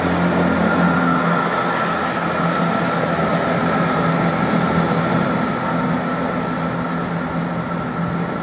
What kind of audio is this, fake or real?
real